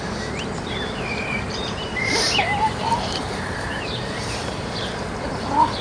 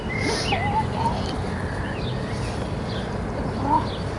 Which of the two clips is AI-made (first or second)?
first